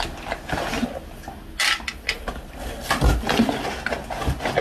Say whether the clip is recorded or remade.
recorded